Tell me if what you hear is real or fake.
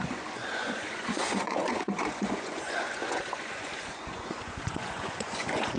fake